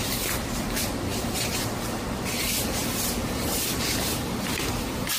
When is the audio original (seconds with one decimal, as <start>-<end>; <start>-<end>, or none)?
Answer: 0.0-5.2